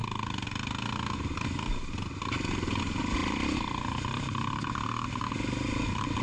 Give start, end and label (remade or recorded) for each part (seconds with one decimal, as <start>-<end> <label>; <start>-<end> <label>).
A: 0.0-6.2 recorded